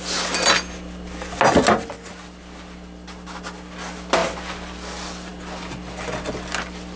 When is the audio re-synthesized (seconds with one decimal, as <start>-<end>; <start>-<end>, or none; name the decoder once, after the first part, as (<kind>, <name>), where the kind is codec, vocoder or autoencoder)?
none

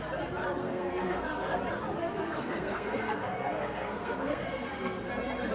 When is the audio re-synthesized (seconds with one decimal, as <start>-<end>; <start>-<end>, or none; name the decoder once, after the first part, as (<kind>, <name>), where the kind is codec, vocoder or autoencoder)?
0.6-1.6 (codec, SNAC); 2.0-5.1

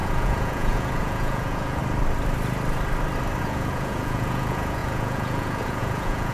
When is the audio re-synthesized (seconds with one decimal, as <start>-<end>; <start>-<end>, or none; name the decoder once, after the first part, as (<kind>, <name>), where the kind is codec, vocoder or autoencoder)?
0.0-1.8 (vocoder, Vocos); 3.4-6.3

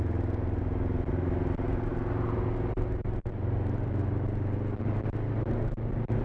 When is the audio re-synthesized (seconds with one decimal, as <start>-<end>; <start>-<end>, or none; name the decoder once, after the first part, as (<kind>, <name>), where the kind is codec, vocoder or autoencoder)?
none

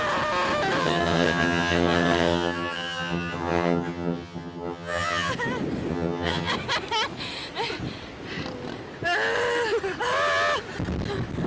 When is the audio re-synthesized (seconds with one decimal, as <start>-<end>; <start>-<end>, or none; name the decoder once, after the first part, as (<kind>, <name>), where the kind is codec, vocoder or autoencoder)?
0.8-5.3 (vocoder, HiFi-GAN); 5.9-6.5